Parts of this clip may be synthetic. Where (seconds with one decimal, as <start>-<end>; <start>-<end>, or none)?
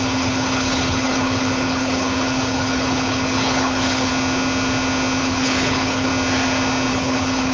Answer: 0.0-4.1; 5.2-6.1; 6.9-7.5